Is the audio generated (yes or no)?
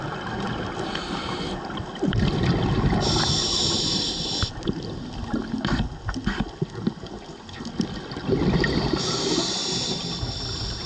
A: no